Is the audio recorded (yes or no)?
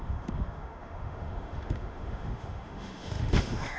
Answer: no